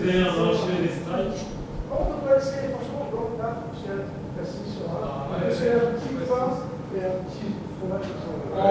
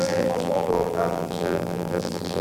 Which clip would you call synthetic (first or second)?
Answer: second